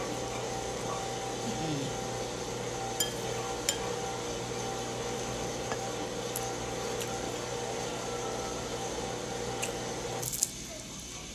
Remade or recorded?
recorded